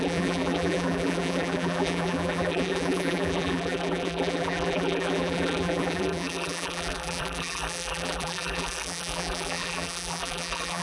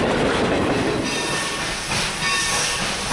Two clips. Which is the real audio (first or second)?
second